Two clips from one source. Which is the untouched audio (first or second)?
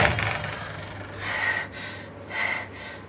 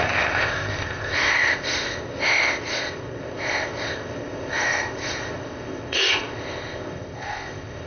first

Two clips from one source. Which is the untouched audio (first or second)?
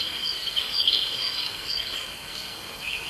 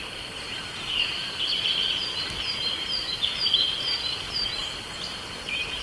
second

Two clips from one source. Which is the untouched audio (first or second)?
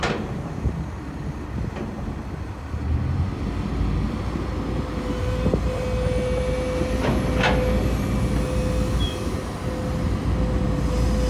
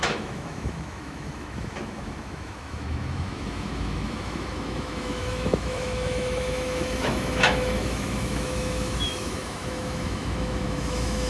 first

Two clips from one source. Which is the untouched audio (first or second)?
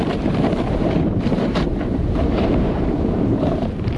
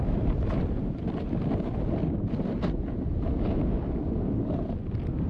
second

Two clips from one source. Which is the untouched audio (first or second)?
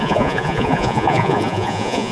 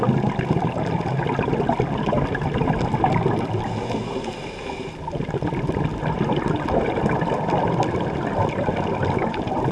second